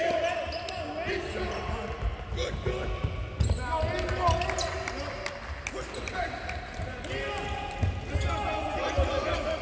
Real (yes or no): yes